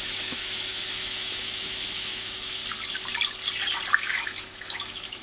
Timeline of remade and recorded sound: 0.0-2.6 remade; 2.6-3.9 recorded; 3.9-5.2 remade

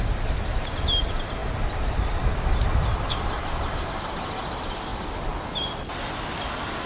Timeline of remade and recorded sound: 0.0-6.9 recorded